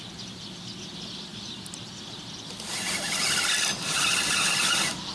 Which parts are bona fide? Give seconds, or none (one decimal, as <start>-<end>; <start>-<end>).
0.0-5.1